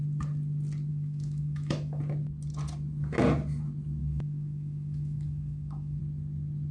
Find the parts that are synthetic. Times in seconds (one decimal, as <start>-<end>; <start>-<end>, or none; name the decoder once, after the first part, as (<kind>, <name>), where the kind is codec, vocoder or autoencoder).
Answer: 0.9-2.0 (autoencoder, DAC-VAE); 4.0-6.0